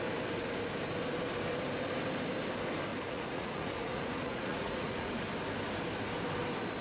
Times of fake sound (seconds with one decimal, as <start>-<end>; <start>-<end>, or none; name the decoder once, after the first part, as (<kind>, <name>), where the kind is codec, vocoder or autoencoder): 2.9-5.1 (vocoder, Vocos)